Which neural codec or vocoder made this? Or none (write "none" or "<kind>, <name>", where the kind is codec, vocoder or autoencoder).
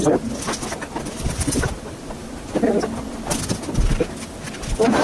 none